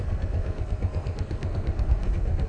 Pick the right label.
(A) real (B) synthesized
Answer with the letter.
B